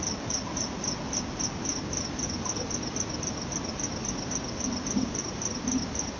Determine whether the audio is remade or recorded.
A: recorded